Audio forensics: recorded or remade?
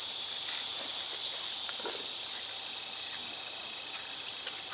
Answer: recorded